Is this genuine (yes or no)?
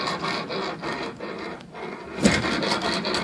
yes